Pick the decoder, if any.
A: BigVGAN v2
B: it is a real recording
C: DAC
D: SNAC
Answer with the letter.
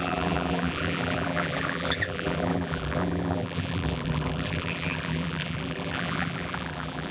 A